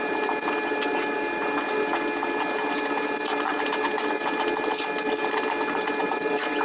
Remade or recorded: recorded